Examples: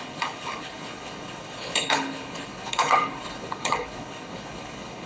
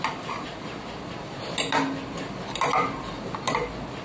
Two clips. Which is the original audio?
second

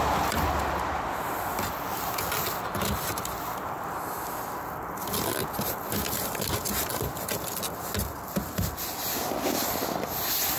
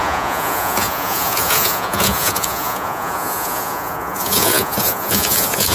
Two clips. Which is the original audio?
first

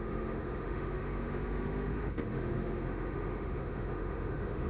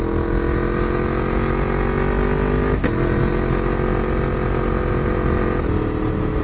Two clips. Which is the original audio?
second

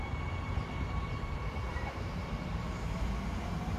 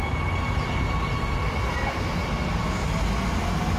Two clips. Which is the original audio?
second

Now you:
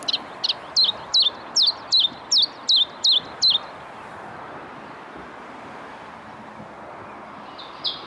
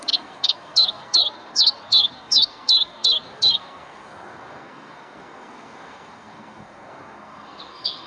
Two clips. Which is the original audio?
first